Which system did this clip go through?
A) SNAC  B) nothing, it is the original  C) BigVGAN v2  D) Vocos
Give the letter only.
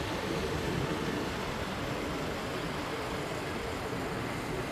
B